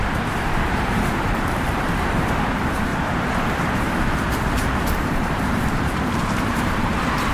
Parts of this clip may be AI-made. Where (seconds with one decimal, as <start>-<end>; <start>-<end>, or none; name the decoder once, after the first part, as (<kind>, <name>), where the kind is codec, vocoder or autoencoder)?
0.0-7.3 (vocoder, BigVGAN v2)